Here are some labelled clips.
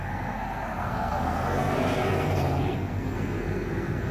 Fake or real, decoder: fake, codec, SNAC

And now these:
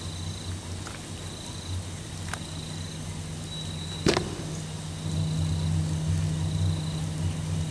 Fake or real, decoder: real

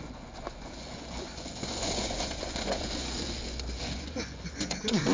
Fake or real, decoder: fake, vocoder, Vocos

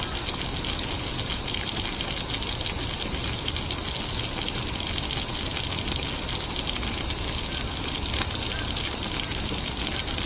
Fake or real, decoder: real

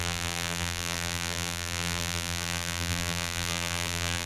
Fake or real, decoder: fake, vocoder, BigVGAN v2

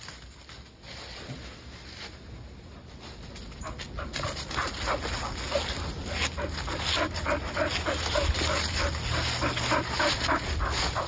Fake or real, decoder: real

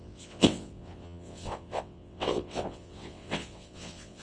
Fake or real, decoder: fake, vocoder, WaveNeXt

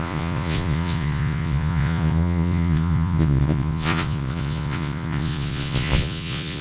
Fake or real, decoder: fake, vocoder, Vocos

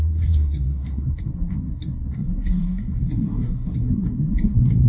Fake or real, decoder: fake, codec, SNAC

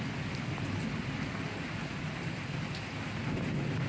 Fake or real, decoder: real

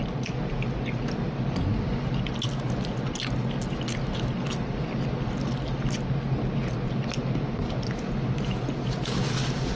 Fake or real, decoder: real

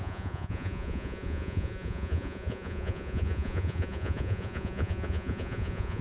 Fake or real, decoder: fake, vocoder, Vocos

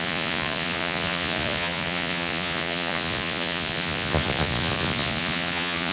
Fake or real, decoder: fake, vocoder, Vocos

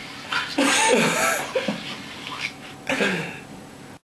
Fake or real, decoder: real